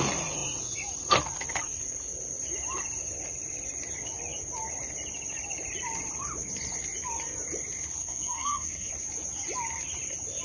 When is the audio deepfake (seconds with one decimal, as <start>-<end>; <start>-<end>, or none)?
8.0-8.9

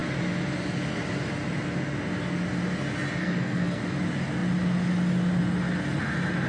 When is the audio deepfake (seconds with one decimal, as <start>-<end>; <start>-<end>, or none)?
3.2-3.8

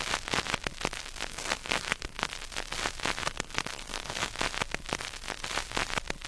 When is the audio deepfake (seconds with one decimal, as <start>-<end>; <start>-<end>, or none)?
1.3-2.3; 3.2-4.3

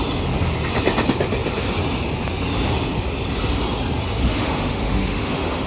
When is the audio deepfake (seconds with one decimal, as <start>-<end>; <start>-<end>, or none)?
4.2-5.7

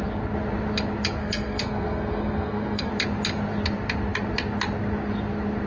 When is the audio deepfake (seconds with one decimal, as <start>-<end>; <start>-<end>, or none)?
1.2-2.9